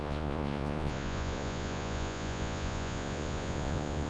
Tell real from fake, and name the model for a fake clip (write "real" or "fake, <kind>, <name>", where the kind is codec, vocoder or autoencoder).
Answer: fake, vocoder, Vocos